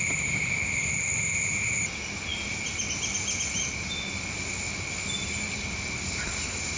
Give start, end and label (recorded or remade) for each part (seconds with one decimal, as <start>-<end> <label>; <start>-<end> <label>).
0.0-6.8 recorded